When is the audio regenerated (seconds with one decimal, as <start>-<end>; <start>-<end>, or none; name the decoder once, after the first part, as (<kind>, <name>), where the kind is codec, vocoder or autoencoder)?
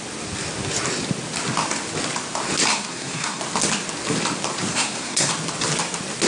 2.7-3.4 (codec, SNAC); 4.7-5.3